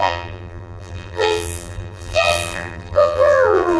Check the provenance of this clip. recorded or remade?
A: remade